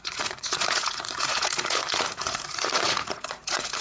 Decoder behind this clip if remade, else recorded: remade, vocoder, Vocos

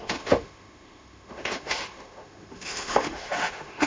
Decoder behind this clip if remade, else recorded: remade, autoencoder, DAC-VAE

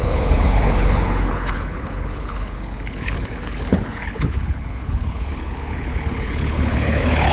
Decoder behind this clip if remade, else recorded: remade, codec, HILCodec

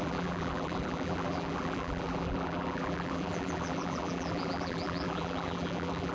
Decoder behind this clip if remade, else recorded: remade, vocoder, BigVGAN v2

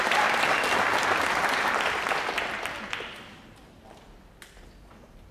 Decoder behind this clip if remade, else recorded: recorded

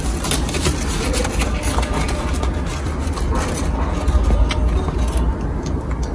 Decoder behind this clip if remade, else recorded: recorded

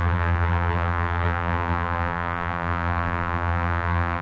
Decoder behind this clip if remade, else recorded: remade, vocoder, BigVGAN v2